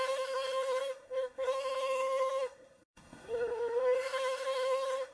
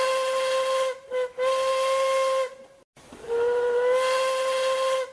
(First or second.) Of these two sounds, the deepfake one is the first